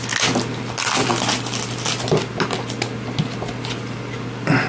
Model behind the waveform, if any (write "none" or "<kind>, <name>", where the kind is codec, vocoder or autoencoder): none